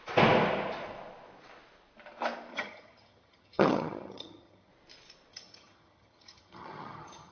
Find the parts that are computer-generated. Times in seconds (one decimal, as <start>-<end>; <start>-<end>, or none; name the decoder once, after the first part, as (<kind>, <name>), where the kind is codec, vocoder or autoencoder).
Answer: 2.5-4.7 (vocoder, HiFi-GAN); 5.3-7.3